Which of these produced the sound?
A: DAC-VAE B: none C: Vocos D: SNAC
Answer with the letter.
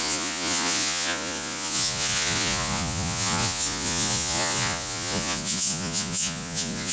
C